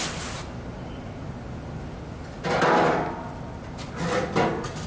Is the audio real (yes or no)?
yes